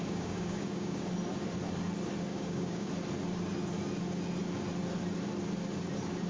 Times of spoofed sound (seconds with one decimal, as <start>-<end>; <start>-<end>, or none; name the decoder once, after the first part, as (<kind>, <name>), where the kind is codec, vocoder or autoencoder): 0.0-1.1 (codec, DAC); 2.3-2.9